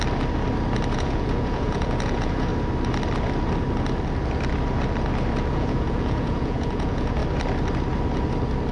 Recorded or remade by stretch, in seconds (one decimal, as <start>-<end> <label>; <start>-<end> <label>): 0.0-0.9 recorded; 0.9-2.5 remade; 2.5-5.5 recorded; 5.5-7.2 remade; 7.2-8.7 recorded